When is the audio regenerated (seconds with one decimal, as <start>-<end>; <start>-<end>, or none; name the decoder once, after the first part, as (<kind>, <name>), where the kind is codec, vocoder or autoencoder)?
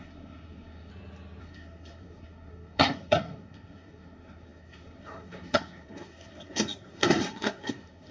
0.0-0.9 (codec, SNAC); 1.4-8.1